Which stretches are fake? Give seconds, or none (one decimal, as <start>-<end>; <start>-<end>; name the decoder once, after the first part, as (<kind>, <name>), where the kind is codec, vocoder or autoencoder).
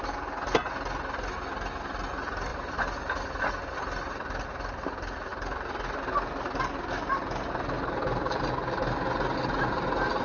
none